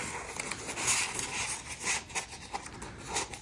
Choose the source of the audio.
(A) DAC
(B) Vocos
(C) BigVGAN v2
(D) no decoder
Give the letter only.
D